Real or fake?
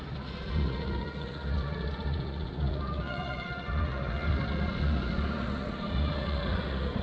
fake